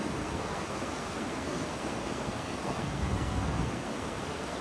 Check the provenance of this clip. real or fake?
fake